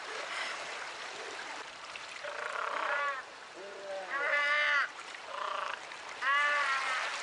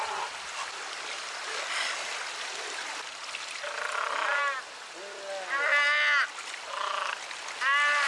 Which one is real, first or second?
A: second